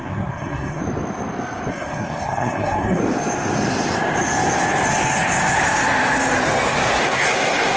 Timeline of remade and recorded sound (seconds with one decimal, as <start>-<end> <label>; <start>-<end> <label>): 0.0-0.8 remade; 0.8-1.7 recorded; 1.7-3.0 remade; 3.0-7.0 recorded; 7.0-7.8 remade

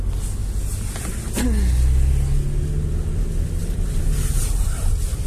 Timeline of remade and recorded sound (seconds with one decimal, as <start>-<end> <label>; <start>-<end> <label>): 0.0-5.3 recorded

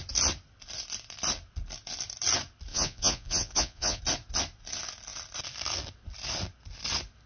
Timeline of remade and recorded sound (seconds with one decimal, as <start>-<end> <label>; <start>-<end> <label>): 0.0-2.7 recorded; 2.7-4.0 remade; 4.0-7.3 recorded

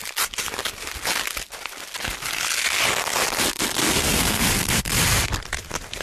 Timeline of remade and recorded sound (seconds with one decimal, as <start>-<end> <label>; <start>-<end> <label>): 0.0-3.8 recorded; 3.8-4.8 remade; 4.8-6.0 recorded

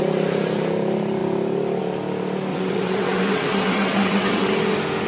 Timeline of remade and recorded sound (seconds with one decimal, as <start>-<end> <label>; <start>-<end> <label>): 0.0-2.5 recorded; 2.5-4.5 remade; 4.5-5.1 recorded